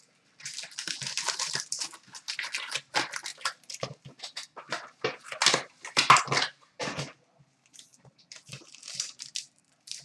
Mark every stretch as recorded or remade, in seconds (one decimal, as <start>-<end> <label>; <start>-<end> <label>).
0.0-10.0 recorded